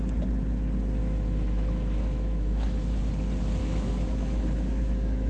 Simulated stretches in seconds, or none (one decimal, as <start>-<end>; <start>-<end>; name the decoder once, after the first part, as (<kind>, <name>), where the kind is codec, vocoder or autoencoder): 1.0-3.0 (autoencoder, DAC-VAE); 3.6-5.3